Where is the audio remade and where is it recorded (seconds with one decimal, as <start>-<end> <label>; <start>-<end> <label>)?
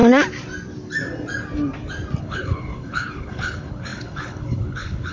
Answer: 0.0-2.2 recorded; 2.2-5.1 remade